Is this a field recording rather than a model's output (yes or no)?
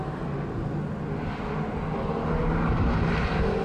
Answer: yes